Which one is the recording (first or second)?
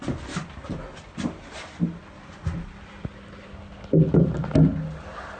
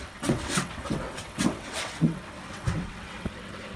first